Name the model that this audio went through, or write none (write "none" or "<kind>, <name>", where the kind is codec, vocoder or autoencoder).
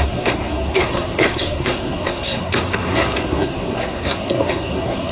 codec, SNAC